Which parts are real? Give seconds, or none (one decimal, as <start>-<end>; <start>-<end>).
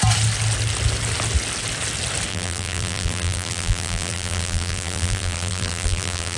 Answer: 0.0-2.3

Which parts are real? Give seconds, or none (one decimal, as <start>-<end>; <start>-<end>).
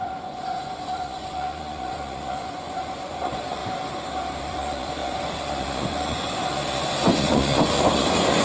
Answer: 3.6-4.4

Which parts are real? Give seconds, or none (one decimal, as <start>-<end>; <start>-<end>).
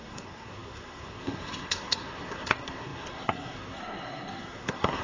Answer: none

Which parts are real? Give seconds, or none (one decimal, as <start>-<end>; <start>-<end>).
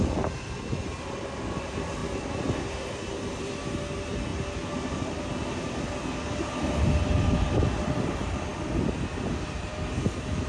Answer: 2.0-2.7; 4.3-7.4; 8.5-10.5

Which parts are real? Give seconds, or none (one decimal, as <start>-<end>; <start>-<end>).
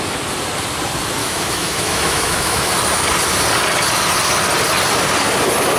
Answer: 0.0-1.2; 2.7-5.8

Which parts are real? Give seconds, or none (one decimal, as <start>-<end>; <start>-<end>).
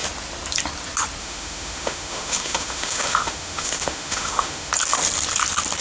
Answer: 0.0-1.2; 4.7-5.8